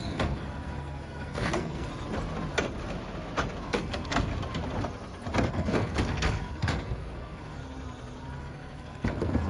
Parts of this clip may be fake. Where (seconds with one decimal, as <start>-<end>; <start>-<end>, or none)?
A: 0.0-1.9; 3.6-4.3; 5.5-7.6; 8.4-9.5